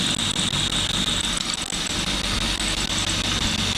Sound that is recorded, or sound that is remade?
recorded